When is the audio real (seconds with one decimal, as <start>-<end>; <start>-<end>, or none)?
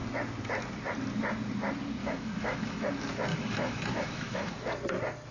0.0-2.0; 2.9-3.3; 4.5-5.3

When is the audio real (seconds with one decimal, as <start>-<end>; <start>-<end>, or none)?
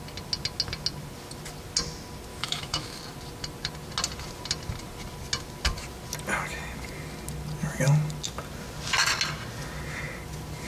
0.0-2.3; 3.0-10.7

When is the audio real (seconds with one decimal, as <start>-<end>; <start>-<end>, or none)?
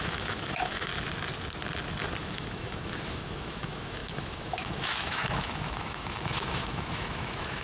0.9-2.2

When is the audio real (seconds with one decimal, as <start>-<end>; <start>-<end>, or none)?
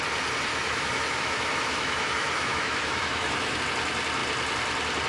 0.0-0.5; 3.6-5.1